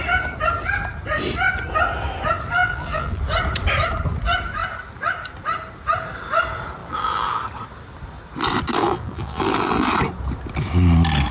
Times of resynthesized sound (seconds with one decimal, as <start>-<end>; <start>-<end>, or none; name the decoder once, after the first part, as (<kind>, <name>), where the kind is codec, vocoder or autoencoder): 2.6-3.2 (vocoder, BigVGAN v2); 6.8-7.4; 8.8-9.9